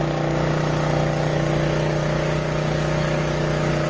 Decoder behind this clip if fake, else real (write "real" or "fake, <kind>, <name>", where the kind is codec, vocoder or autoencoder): fake, codec, DAC